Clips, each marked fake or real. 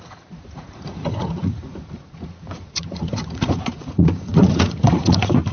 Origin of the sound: fake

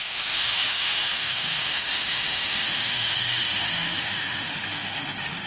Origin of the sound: fake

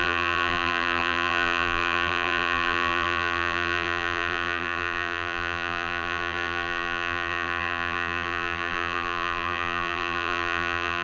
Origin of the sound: fake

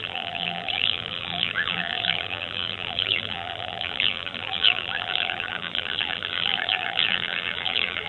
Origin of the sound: fake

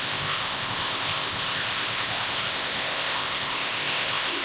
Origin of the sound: fake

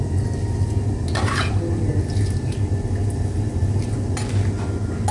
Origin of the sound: real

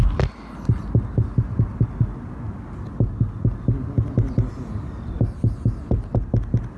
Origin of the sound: real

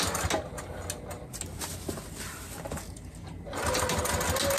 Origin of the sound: real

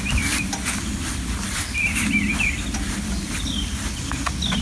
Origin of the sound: real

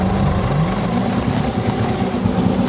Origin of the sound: real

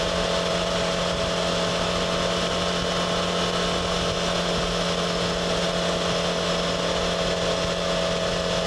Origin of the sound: real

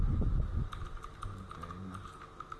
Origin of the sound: real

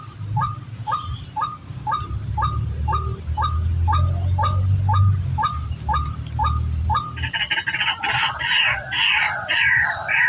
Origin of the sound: real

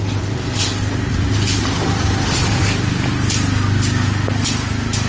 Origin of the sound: real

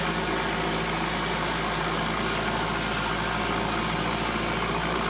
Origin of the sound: real